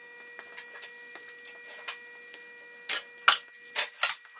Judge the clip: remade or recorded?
recorded